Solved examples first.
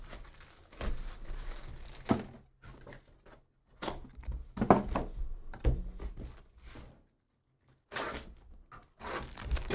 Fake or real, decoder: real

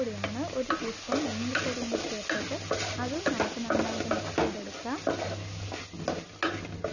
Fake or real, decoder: real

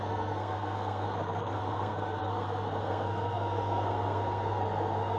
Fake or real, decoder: fake, codec, SNAC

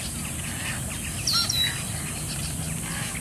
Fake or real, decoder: real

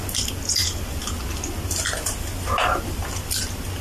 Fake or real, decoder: real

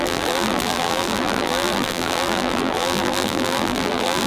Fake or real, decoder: fake, vocoder, BigVGAN v2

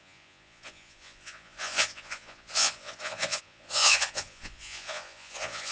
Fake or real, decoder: fake, vocoder, Vocos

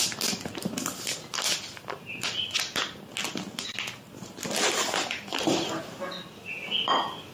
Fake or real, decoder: real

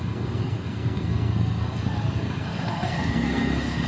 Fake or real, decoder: fake, codec, SNAC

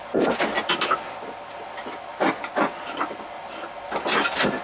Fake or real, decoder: real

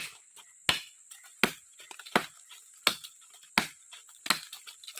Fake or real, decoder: real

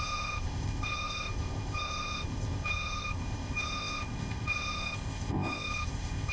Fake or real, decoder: fake, codec, ZipCodec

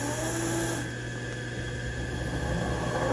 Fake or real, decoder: real